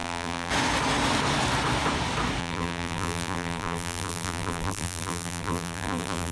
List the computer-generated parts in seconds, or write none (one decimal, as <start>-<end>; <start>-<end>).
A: 0.0-0.5; 2.4-6.3